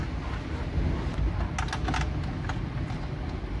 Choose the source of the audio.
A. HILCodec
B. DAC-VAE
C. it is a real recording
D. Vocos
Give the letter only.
C